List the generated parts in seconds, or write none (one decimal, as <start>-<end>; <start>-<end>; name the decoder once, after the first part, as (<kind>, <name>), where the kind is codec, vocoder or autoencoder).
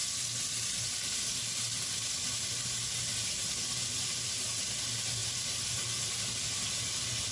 none